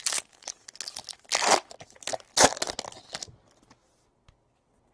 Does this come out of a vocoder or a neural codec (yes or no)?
no